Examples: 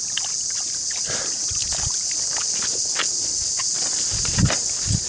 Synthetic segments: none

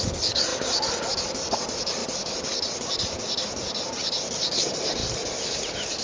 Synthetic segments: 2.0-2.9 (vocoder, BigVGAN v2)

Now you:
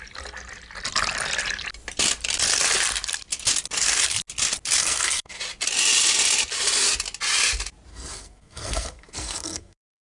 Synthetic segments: 4.8-5.4 (codec, SNAC); 7.9-10.0

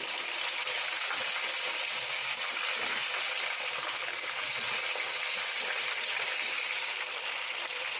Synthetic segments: none